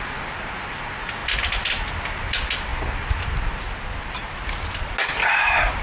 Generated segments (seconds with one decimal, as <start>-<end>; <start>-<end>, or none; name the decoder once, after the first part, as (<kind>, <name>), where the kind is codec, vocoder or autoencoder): none